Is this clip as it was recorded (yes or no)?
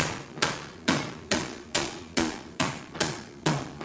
no